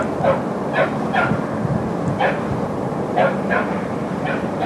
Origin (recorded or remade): recorded